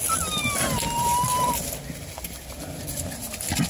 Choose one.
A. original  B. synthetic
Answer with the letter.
A